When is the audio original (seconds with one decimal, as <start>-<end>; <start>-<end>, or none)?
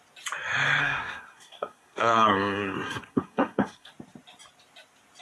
0.0-0.8; 3.9-5.2